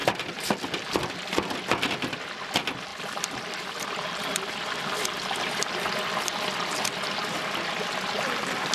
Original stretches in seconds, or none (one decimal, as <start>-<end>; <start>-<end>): 0.0-2.9; 6.7-8.7